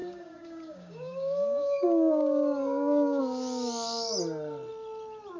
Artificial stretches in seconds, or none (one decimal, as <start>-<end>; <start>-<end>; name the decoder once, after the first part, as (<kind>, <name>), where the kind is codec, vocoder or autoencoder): 0.0-3.2 (codec, DAC)